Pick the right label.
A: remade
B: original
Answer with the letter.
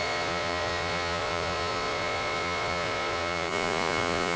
A